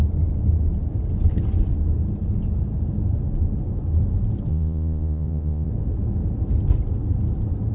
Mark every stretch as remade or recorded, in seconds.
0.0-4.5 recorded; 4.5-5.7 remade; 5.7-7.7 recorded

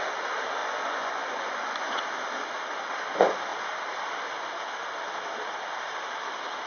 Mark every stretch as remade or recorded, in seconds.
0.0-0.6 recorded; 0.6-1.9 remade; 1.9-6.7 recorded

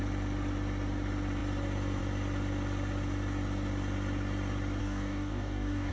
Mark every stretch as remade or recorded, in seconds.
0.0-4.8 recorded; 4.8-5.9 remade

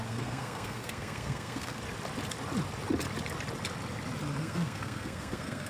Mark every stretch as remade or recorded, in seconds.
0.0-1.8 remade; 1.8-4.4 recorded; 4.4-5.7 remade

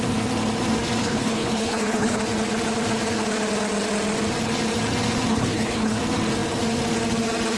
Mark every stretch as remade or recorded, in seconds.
0.0-1.0 recorded; 1.0-2.2 remade; 2.2-5.3 recorded; 5.3-6.0 remade; 6.0-7.6 recorded

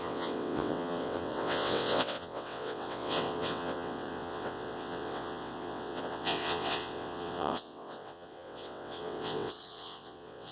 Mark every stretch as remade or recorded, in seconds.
0.0-10.5 remade

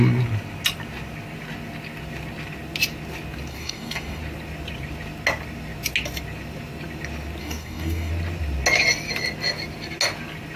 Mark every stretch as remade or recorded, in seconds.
0.0-3.5 recorded; 3.5-4.2 remade; 4.2-7.4 recorded; 7.4-8.1 remade; 8.1-10.6 recorded